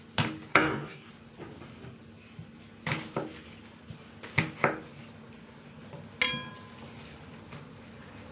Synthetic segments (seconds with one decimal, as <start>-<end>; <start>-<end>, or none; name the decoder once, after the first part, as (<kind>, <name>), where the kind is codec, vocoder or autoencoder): 0.5-1.1 (codec, DAC)